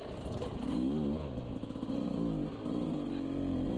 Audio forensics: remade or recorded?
recorded